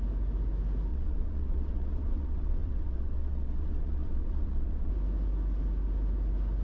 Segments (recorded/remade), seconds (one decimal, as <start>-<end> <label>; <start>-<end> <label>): 0.0-0.9 recorded; 0.9-4.9 remade; 4.9-6.6 recorded